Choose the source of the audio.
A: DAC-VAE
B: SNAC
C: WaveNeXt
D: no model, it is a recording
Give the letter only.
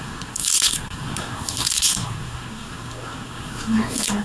B